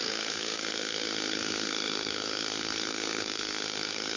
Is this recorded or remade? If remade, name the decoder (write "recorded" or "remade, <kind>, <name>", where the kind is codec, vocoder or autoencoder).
remade, codec, SNAC